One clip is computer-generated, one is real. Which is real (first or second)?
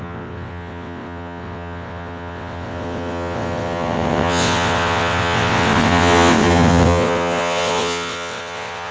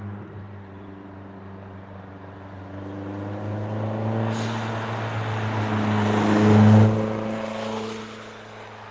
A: second